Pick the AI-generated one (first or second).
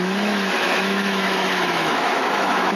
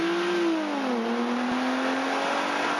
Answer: first